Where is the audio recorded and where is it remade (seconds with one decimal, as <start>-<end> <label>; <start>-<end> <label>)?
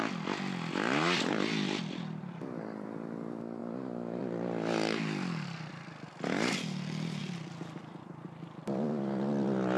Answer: 0.0-9.8 recorded